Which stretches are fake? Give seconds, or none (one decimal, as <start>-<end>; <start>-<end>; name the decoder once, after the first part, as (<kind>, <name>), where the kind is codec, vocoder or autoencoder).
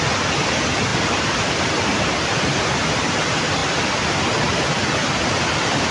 0.9-2.4 (vocoder, BigVGAN v2)